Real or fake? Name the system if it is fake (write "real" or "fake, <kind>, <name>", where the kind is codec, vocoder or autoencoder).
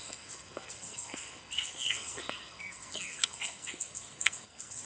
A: fake, codec, SNAC